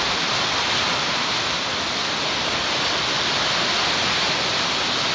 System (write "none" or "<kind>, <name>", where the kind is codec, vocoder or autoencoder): none